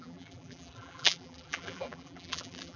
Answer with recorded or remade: remade